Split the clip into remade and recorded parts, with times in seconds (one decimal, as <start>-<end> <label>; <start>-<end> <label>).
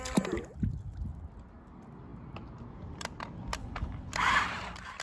0.0-3.6 recorded; 3.6-4.1 remade; 4.1-5.0 recorded